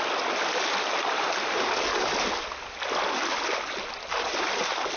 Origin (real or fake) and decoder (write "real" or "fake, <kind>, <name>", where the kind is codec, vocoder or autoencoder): real